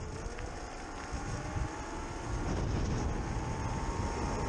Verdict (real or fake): real